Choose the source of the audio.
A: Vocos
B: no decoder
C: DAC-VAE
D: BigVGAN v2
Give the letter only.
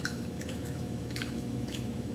C